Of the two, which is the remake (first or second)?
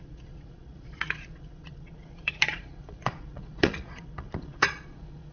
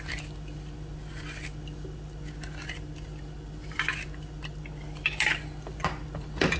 first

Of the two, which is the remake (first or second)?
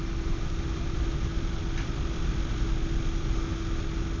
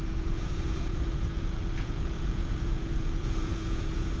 second